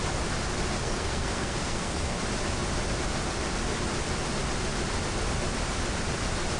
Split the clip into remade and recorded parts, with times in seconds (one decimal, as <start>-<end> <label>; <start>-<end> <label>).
0.0-0.8 recorded; 0.8-2.2 remade; 2.2-6.6 recorded